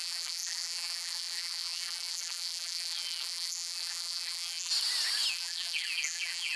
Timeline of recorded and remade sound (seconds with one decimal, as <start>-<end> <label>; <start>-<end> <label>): 0.0-4.7 remade; 4.7-5.3 recorded; 5.3-6.6 remade